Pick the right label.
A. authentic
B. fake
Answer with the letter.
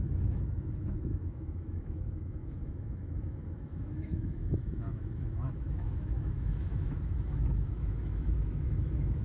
B